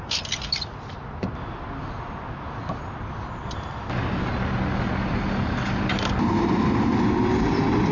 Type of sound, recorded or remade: recorded